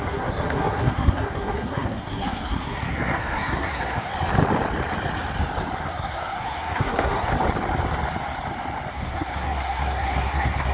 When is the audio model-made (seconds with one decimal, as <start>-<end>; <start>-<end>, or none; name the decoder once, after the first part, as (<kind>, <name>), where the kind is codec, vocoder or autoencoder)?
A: 0.0-4.1 (codec, SNAC); 5.8-7.3; 8.9-10.7